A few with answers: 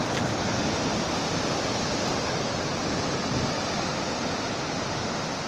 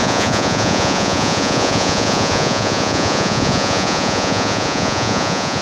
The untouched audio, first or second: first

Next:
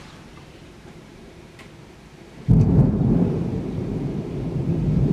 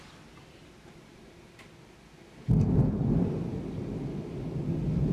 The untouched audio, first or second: second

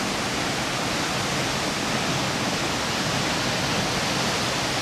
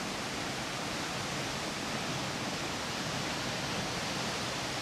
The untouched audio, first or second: first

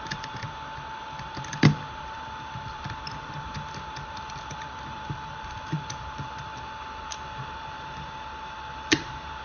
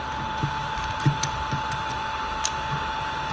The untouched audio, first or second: second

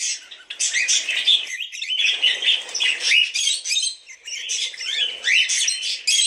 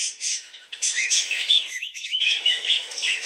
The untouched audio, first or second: first